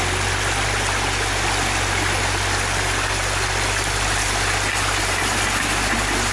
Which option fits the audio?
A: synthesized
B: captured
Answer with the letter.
B